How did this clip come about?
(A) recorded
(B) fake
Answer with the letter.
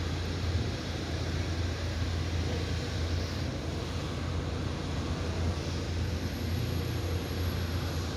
A